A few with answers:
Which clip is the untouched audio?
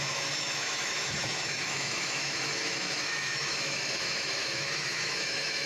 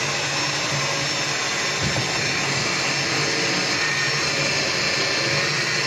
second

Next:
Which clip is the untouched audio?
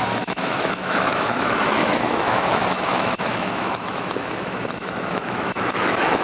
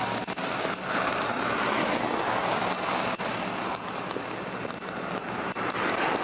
second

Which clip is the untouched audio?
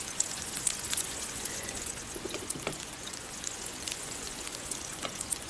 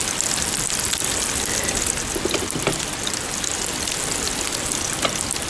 second